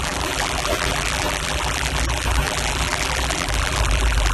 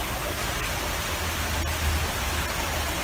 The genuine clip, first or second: second